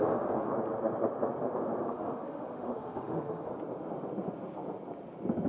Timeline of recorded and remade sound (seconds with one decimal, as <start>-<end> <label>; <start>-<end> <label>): 0.0-0.5 remade; 0.5-1.9 recorded; 1.9-3.5 remade; 3.5-5.5 recorded